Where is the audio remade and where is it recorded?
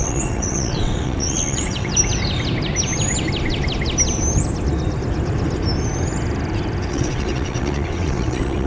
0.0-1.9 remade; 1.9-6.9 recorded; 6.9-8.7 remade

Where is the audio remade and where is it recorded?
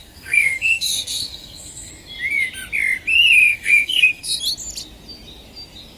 0.0-1.9 remade; 1.9-3.4 recorded; 3.4-4.4 remade; 4.4-6.0 recorded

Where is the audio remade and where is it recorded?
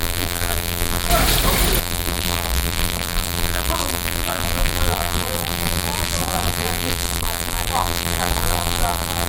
0.0-1.1 remade; 1.1-1.8 recorded; 1.8-9.3 remade